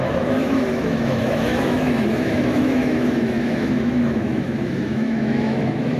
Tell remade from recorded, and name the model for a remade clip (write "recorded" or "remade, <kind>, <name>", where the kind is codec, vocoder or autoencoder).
remade, autoencoder, DAC-VAE